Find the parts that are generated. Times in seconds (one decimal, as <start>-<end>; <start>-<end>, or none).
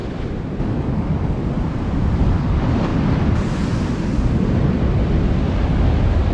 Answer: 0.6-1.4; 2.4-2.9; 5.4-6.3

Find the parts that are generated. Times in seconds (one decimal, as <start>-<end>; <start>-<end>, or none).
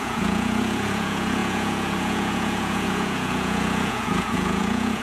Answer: 0.0-5.0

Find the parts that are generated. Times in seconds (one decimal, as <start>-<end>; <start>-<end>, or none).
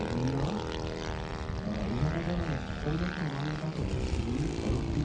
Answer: none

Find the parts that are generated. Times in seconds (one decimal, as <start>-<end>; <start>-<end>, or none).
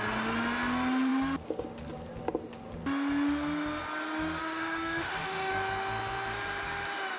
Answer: 4.4-5.5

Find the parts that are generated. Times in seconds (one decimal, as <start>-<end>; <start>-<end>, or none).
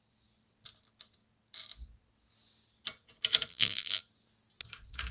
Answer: 3.5-4.0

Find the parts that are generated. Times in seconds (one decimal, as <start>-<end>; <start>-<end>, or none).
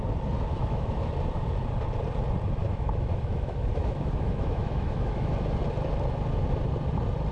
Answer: 0.5-1.1; 2.6-5.3